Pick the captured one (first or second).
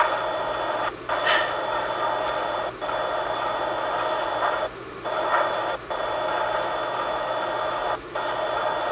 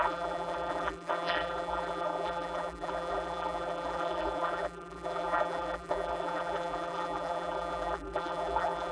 first